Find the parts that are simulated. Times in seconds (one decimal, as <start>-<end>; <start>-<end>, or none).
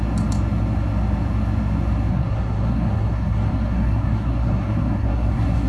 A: 2.1-5.7